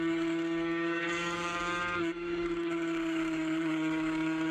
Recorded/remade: remade